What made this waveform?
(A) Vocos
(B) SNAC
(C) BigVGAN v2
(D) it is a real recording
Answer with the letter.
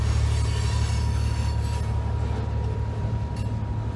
D